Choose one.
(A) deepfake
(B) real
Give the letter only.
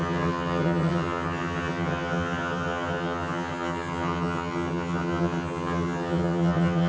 A